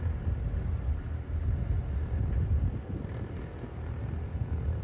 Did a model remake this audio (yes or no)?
no